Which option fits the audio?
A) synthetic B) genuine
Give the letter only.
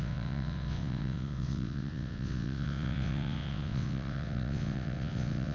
A